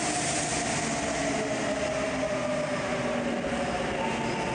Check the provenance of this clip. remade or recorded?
recorded